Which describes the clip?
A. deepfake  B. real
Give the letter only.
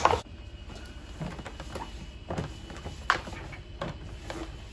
B